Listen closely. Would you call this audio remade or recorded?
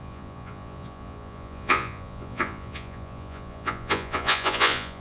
remade